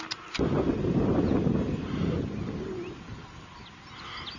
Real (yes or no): yes